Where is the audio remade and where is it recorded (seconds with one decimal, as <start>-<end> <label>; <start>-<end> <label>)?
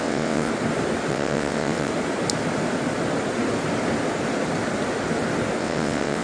0.0-0.5 remade; 0.5-1.1 recorded; 1.1-1.9 remade; 1.9-5.6 recorded; 5.6-6.2 remade